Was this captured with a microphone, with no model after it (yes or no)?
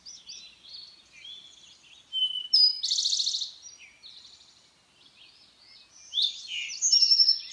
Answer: yes